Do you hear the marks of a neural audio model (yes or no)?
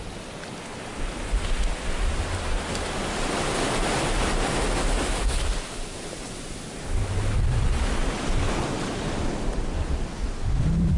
no